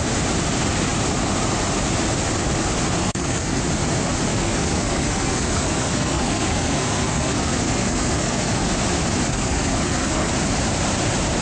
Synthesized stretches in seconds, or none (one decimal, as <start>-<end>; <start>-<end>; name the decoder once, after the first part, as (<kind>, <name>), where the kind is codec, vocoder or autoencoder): 3.0-3.6 (codec, SNAC); 4.3-8.7; 9.3-10.3